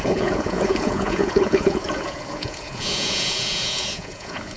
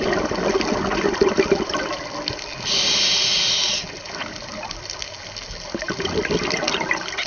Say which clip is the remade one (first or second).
first